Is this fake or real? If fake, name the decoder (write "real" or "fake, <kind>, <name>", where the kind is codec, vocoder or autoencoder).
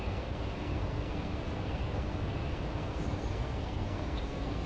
fake, codec, SNAC